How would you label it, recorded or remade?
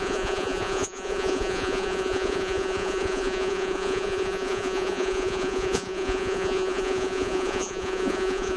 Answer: remade